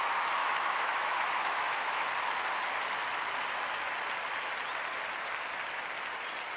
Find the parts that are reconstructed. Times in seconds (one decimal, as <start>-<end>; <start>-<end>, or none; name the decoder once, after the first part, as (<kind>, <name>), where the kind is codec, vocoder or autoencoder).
0.4-2.1 (autoencoder, DAC-VAE)